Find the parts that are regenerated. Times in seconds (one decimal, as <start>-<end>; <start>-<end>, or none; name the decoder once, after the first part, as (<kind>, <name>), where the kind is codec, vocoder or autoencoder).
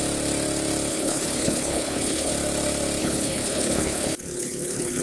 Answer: 0.9-2.3 (codec, HILCodec); 3.0-5.0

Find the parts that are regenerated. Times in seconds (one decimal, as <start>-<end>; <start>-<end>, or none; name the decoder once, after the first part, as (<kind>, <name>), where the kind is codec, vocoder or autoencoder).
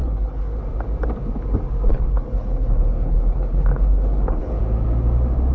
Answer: 0.0-0.6 (codec, HILCodec); 1.9-4.6